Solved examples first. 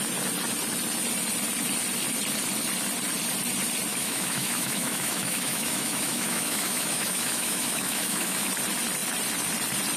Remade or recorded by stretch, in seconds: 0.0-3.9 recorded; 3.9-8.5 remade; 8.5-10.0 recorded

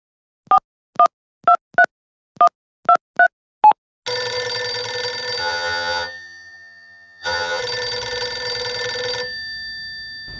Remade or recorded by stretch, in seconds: 0.0-5.4 recorded; 5.4-7.6 remade; 7.6-10.4 recorded

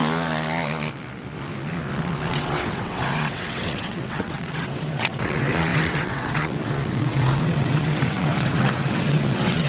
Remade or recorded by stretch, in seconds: 0.0-2.3 recorded; 2.3-9.7 remade